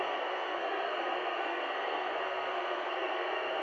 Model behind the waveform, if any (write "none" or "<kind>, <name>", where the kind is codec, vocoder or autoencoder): codec, SNAC